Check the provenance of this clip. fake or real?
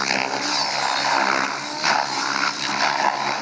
real